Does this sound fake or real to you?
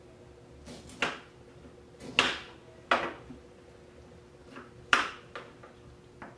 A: real